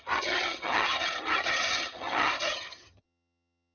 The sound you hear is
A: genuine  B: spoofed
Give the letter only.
B